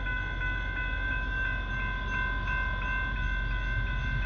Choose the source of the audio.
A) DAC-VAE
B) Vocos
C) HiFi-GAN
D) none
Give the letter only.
D